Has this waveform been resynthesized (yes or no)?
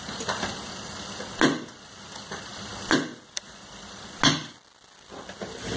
no